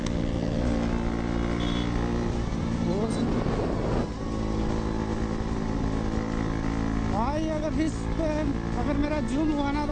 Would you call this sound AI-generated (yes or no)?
no